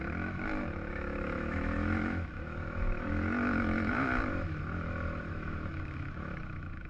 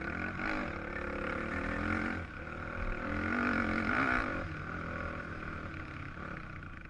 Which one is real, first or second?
second